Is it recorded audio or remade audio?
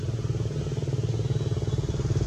recorded